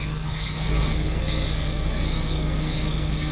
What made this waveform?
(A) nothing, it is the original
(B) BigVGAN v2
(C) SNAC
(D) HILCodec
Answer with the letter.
C